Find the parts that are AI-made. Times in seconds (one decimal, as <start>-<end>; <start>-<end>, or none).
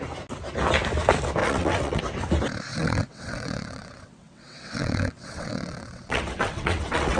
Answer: 1.4-2.0; 2.7-7.2